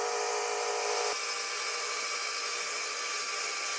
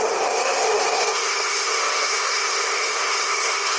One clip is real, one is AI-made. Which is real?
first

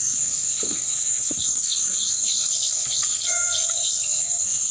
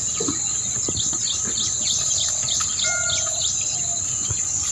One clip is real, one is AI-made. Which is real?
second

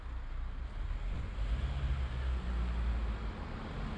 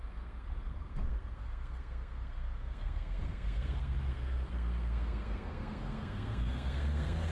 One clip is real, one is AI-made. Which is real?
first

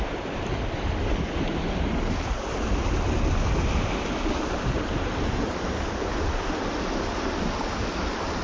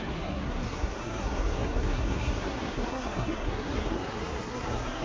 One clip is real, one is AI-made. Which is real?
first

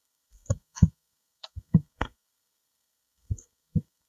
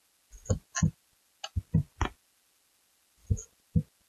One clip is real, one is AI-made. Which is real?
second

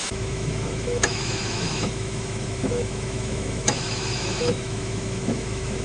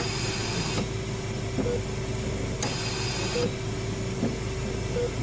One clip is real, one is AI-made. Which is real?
second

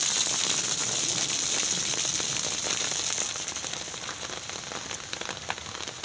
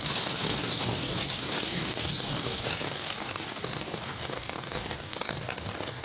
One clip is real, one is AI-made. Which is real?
first